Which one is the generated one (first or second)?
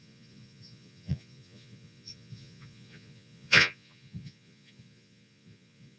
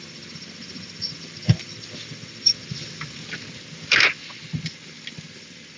first